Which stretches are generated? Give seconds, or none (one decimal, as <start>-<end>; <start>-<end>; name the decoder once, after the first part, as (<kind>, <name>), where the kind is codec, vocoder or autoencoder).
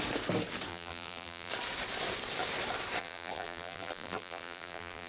0.7-1.5 (vocoder, BigVGAN v2); 3.0-5.1